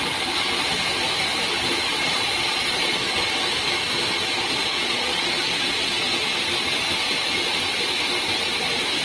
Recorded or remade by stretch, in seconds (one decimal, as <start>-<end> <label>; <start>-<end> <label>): 0.0-1.9 recorded; 1.9-3.0 remade; 3.0-4.6 recorded; 4.6-6.3 remade; 6.3-9.0 recorded